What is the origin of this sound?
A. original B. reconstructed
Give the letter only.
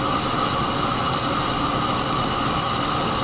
A